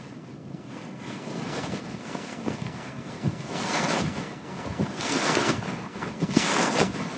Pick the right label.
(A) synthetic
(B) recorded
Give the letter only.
A